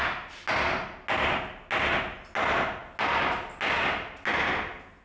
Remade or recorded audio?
recorded